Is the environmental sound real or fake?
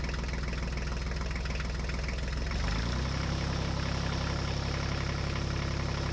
real